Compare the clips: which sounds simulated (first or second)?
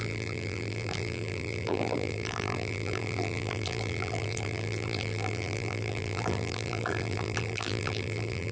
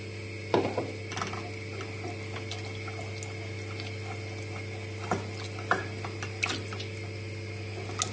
first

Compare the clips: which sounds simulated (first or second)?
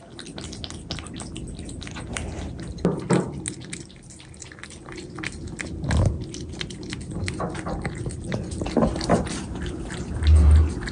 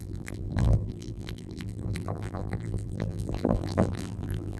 second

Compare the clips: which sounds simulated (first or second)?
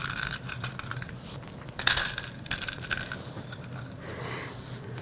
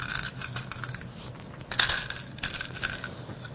first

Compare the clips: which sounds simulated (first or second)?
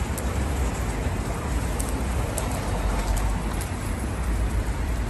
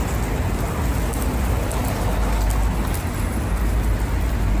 first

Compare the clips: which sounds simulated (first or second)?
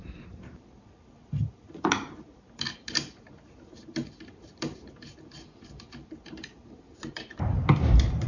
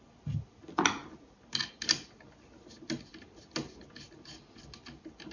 first